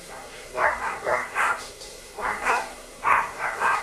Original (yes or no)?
no